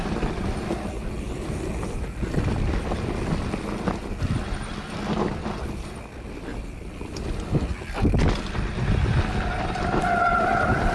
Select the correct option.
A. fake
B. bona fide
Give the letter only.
B